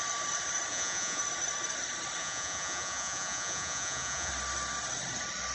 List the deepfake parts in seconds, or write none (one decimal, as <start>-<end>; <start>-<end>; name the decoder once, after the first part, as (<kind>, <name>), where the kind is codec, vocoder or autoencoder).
0.7-1.2 (vocoder, Vocos); 2.2-4.3